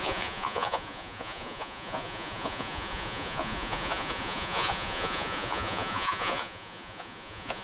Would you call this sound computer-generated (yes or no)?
yes